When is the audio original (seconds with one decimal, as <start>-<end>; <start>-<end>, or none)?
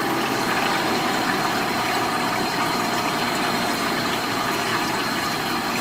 0.0-5.8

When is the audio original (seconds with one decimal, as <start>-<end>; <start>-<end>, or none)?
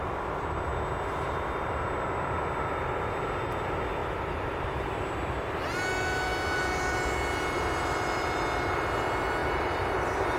0.0-4.0; 5.0-9.4